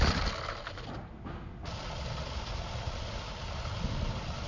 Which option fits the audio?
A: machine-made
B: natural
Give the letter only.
B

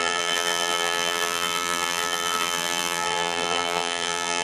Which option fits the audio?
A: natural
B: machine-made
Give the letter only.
B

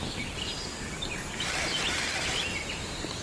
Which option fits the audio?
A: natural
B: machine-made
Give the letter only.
A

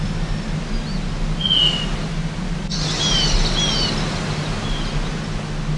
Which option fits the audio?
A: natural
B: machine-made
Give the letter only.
A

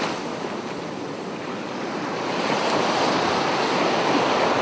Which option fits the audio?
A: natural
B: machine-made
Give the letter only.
A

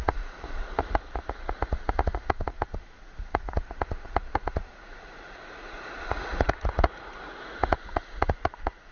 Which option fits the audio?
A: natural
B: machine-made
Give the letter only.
B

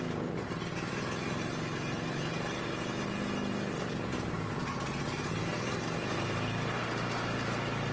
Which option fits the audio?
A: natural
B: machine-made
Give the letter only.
A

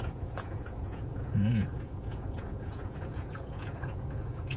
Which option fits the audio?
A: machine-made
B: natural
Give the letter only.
A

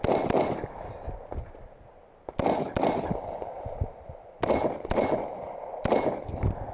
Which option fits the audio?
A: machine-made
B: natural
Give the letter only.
B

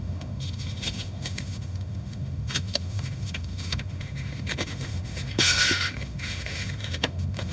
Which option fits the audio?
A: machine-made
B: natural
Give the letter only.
A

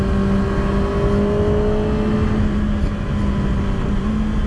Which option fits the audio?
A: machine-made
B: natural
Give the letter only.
B